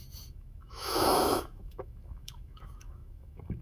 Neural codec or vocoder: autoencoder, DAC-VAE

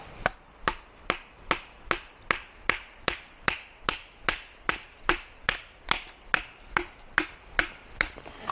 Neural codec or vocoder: none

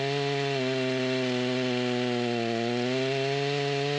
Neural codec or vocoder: none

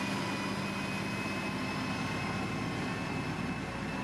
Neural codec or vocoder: none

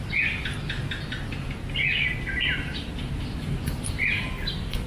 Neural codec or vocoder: none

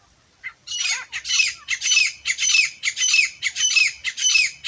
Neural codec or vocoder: none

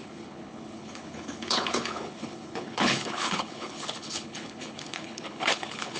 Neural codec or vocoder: codec, HILCodec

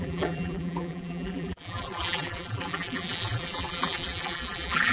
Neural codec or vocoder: vocoder, BigVGAN v2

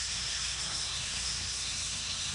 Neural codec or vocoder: codec, SNAC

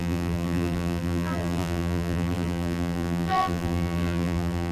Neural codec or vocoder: vocoder, BigVGAN v2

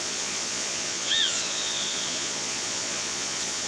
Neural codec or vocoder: vocoder, Vocos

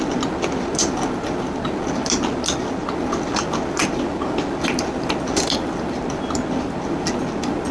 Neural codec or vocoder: none